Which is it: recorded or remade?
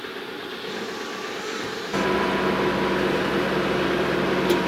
recorded